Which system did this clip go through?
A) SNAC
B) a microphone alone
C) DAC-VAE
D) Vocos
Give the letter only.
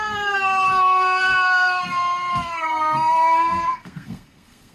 A